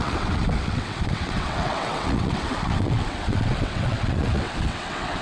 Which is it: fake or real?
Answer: fake